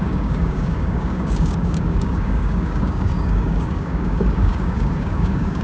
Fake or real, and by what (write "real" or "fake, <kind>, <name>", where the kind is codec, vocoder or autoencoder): fake, codec, DAC